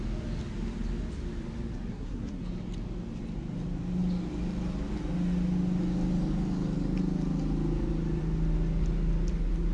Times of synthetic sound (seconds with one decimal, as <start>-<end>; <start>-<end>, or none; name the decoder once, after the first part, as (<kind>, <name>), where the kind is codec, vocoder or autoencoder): 1.9-2.4 (codec, SNAC)